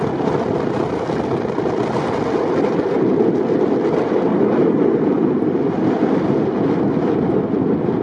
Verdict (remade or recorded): recorded